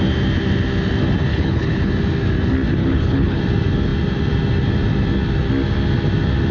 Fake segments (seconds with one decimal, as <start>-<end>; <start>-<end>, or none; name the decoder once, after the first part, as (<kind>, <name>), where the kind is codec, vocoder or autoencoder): 1.3-1.9 (codec, HILCodec); 2.8-3.4